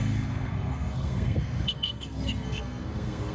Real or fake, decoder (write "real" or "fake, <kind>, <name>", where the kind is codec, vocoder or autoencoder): fake, codec, SNAC